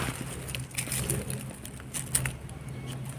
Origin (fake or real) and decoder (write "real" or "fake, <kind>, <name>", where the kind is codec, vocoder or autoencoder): real